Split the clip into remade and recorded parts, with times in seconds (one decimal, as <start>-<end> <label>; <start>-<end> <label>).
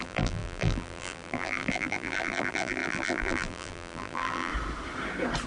0.0-4.5 remade; 4.5-5.5 recorded